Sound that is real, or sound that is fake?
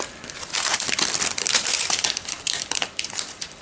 fake